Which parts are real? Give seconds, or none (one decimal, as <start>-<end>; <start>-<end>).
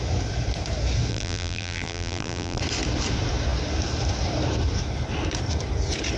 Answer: 0.0-1.1; 2.6-6.2